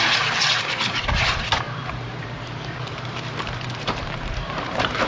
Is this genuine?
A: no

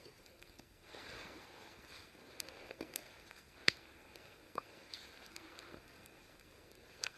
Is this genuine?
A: no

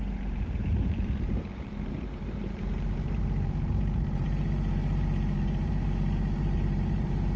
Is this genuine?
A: no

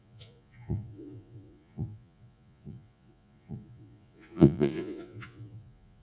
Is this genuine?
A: no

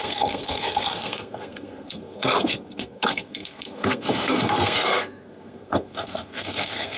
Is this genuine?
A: no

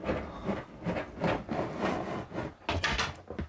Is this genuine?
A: yes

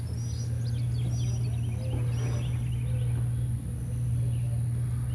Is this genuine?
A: yes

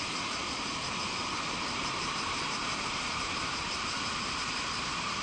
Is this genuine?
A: no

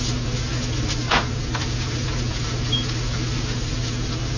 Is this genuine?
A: yes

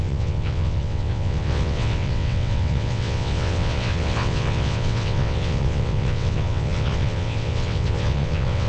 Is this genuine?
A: no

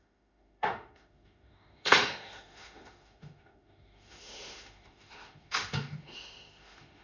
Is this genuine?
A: no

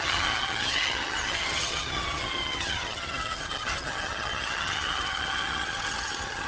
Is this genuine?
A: no